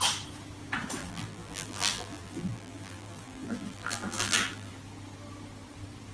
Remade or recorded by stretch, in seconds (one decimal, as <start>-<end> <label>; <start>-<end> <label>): 0.0-1.0 recorded; 1.0-4.7 remade; 4.7-6.1 recorded

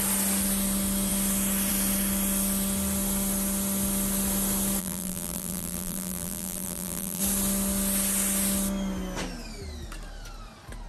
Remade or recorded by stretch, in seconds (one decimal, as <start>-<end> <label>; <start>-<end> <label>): 0.0-4.8 recorded; 4.8-7.2 remade; 7.2-10.9 recorded

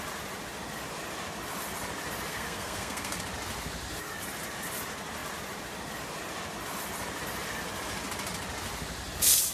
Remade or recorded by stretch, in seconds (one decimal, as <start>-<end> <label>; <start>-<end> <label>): 0.0-2.3 recorded; 2.3-3.2 remade; 3.2-9.5 recorded

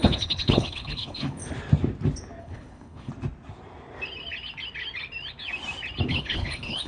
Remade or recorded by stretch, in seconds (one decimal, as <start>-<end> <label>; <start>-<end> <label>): 0.0-1.4 remade; 1.4-2.4 recorded; 2.4-3.1 remade; 3.1-6.1 recorded; 6.1-6.9 remade

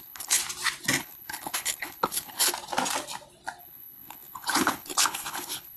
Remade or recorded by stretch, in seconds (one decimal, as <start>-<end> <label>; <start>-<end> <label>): 0.0-0.4 remade; 0.4-1.0 recorded; 1.0-2.5 remade; 2.5-3.6 recorded; 3.6-5.8 remade

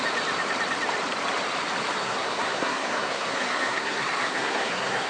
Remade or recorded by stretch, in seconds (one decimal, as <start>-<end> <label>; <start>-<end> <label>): 0.0-2.0 recorded; 2.0-5.1 remade